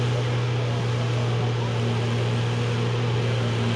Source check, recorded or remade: recorded